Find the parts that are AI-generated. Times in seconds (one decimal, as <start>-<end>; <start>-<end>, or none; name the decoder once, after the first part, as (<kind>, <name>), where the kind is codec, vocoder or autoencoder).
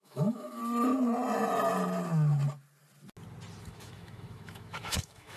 0.0-0.6 (autoencoder, DAC-VAE); 3.6-5.4